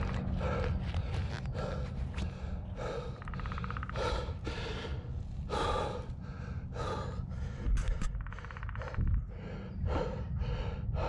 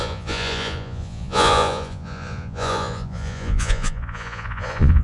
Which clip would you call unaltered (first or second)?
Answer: first